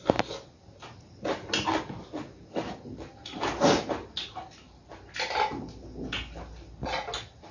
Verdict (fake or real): real